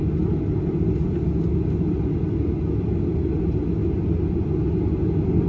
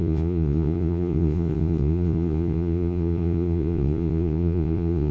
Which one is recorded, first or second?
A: first